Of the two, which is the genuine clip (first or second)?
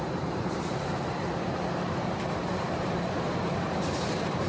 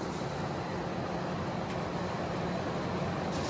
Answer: second